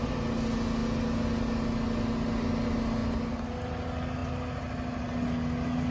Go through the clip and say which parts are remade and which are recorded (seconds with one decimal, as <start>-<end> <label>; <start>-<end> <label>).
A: 0.0-5.9 recorded